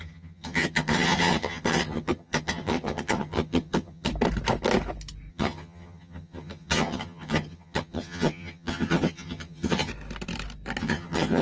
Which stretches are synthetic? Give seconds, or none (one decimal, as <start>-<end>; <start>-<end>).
0.0-4.1; 5.3-9.9; 10.8-11.4